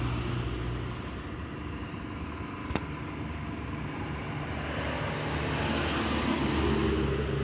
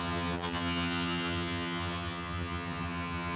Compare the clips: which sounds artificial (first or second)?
second